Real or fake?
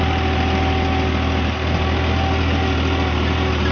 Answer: real